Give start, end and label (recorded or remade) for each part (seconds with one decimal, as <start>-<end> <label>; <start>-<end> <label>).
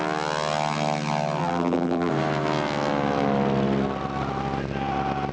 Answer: 0.0-1.4 recorded; 1.4-2.1 remade; 2.1-5.3 recorded